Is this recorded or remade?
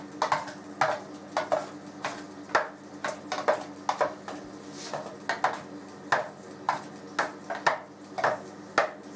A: recorded